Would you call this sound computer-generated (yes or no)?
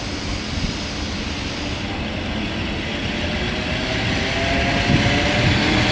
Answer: no